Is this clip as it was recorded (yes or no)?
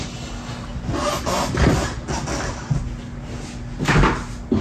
yes